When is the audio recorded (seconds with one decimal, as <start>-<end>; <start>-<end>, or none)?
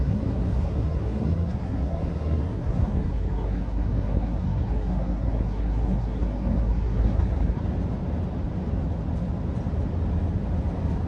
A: 7.6-11.1